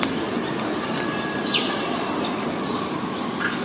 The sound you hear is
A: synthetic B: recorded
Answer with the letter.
B